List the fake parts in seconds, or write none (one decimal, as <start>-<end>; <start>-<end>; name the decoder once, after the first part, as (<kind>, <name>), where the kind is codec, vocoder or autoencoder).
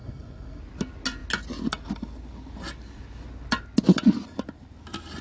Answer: 0.0-0.6 (codec, SNAC)